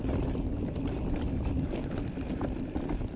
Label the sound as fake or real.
real